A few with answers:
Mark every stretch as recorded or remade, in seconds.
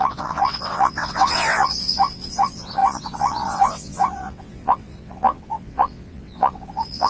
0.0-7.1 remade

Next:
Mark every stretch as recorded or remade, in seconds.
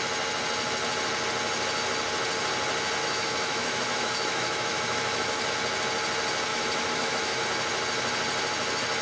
0.0-3.0 recorded; 3.0-5.5 remade; 5.5-6.5 recorded; 6.5-7.4 remade; 7.4-9.0 recorded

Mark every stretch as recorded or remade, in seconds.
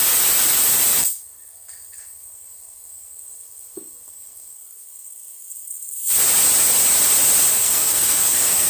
0.0-1.0 recorded; 1.0-6.0 remade; 6.0-7.5 recorded; 7.5-8.7 remade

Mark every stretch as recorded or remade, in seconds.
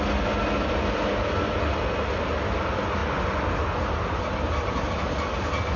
0.0-5.8 recorded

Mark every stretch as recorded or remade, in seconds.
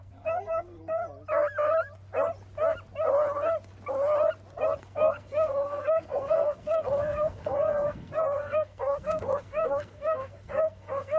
0.0-1.0 remade; 1.0-4.8 recorded; 4.8-11.2 remade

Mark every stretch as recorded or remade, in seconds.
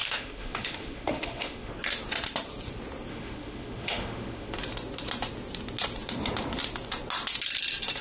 0.0-1.7 remade; 1.7-3.1 recorded; 3.1-4.5 remade; 4.5-8.0 recorded